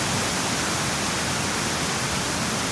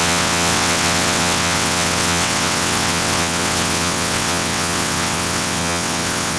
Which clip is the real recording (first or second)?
first